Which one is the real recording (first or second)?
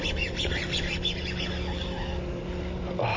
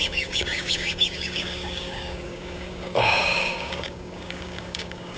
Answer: first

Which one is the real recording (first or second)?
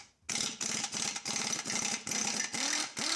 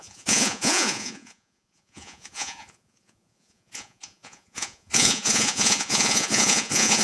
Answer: first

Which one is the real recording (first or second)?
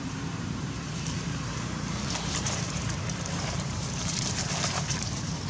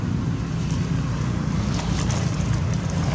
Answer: second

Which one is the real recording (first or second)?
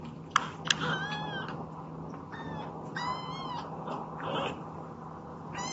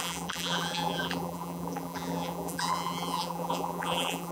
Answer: first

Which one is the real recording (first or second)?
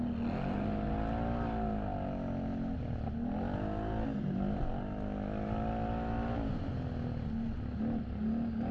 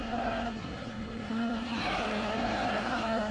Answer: first